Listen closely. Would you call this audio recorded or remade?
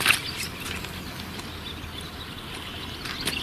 recorded